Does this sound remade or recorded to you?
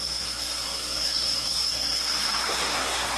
remade